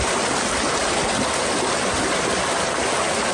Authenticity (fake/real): real